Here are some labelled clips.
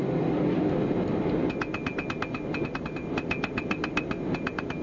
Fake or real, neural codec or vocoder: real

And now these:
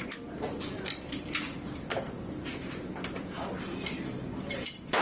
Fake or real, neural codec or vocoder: fake, vocoder, BigVGAN v2